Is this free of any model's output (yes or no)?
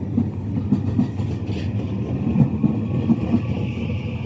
yes